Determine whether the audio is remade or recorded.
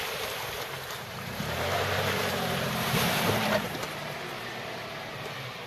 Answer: remade